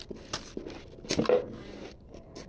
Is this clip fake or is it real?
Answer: real